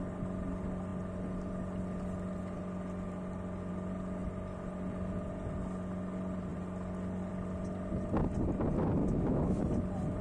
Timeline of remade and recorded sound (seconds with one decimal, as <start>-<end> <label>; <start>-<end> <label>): 0.0-9.0 recorded; 9.0-9.6 remade; 9.6-10.2 recorded

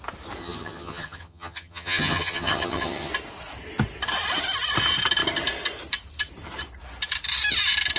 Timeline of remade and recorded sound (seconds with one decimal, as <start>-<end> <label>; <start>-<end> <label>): 0.0-0.4 recorded; 0.4-3.1 remade; 3.1-8.0 recorded

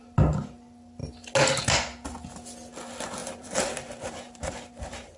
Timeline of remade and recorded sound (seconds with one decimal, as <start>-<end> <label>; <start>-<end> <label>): 0.0-3.2 recorded; 3.2-5.2 remade

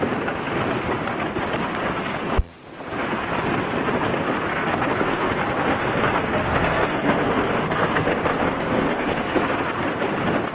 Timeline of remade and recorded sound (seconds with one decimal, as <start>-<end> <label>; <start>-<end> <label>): 0.0-4.5 recorded; 4.5-5.3 remade; 5.3-5.8 recorded; 5.8-9.4 remade; 9.4-10.5 recorded

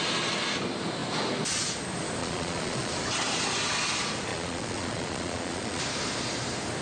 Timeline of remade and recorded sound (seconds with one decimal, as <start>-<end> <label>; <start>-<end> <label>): 0.0-2.2 recorded; 2.2-2.9 remade; 2.9-4.3 recorded; 4.3-5.8 remade; 5.8-6.8 recorded

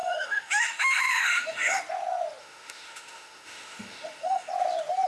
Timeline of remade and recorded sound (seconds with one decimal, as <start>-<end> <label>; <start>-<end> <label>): 0.0-1.8 remade; 1.8-2.4 recorded; 2.4-4.5 remade; 4.5-5.1 recorded

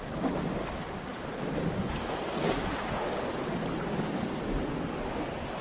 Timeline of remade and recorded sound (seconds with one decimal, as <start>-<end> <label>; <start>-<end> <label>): 0.0-5.6 recorded

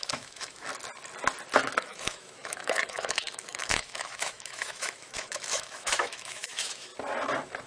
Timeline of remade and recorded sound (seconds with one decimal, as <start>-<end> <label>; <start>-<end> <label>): 0.0-0.7 remade; 0.7-1.8 recorded; 1.8-6.9 remade; 6.9-7.7 recorded